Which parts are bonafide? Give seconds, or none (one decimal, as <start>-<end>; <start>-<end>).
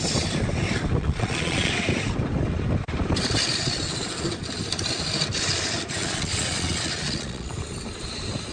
0.0-1.0; 1.7-6.0; 7.5-8.5